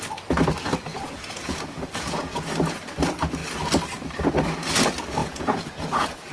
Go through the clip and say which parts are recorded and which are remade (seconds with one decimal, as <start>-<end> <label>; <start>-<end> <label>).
0.0-0.9 recorded; 0.9-2.4 remade; 2.4-5.2 recorded; 5.2-6.3 remade